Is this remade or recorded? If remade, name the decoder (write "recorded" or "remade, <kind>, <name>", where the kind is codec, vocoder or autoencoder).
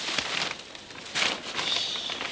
recorded